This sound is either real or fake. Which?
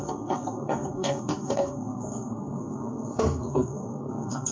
fake